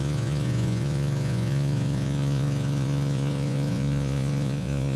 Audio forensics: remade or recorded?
remade